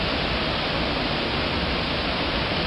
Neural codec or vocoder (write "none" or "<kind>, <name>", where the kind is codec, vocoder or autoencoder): none